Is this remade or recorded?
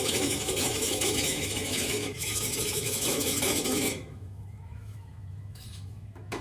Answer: remade